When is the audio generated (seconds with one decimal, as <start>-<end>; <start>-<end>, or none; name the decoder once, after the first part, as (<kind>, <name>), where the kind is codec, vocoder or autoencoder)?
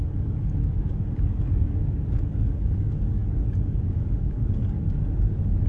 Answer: 0.0-5.7 (codec, DAC)